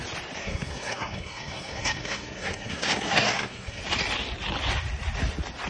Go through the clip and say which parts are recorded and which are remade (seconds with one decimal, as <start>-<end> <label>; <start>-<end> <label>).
0.0-0.4 recorded; 0.4-3.8 remade; 3.8-5.7 recorded